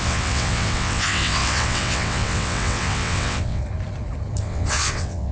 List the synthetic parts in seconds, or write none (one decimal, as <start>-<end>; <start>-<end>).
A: 0.0-3.6; 4.4-5.3